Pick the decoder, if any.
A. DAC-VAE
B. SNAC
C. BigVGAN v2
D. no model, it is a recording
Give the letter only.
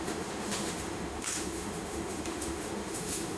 A